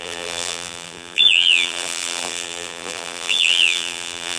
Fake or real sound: fake